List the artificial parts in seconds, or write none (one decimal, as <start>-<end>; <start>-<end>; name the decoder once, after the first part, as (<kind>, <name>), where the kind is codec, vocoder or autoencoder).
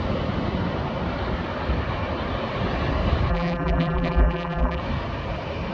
3.3-4.8 (vocoder, BigVGAN v2)